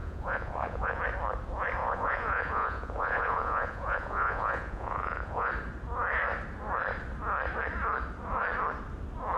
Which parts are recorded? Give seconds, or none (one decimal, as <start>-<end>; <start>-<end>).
1.0-1.8; 5.5-9.4